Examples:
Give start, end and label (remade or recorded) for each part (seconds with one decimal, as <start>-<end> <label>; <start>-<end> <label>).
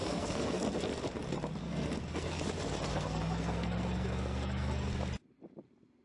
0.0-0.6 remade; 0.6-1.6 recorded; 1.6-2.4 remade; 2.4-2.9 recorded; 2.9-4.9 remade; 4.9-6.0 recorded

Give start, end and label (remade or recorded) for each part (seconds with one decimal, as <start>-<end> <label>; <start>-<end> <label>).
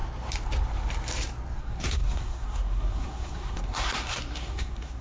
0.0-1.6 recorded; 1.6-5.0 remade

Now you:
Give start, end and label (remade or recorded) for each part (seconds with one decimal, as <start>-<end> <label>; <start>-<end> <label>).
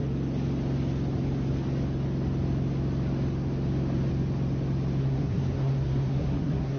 0.0-5.0 recorded; 5.0-6.8 remade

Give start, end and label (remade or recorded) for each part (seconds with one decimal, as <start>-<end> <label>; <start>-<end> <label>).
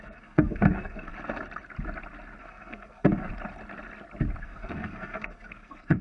0.0-1.1 remade; 1.1-2.4 recorded; 2.4-3.3 remade; 3.3-4.4 recorded; 4.4-6.0 remade